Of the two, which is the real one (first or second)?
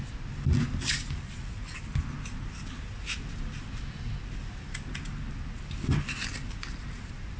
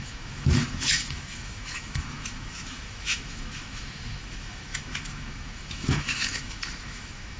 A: first